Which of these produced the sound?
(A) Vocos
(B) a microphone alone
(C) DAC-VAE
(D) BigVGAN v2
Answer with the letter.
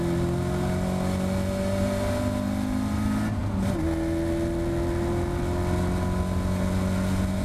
B